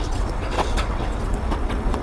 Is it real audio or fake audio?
fake